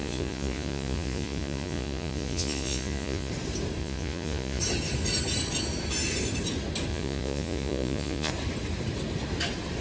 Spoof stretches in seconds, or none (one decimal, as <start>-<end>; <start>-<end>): 0.0-3.3; 3.8-4.6; 6.9-8.3